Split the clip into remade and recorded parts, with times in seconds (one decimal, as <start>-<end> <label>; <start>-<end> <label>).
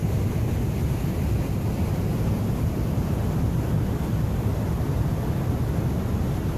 0.0-6.6 recorded